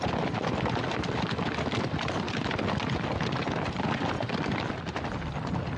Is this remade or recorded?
recorded